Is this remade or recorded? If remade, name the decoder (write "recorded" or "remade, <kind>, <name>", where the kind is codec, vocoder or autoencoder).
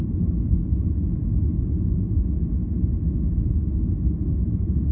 recorded